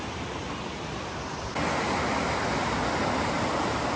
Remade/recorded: recorded